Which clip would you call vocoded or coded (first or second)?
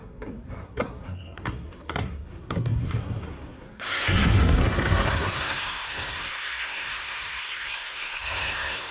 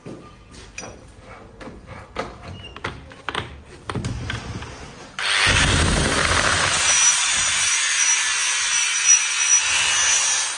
first